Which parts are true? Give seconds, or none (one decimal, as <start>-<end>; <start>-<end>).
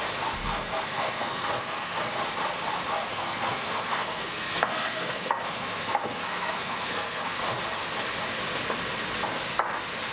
0.0-0.4; 2.1-3.1; 7.4-10.1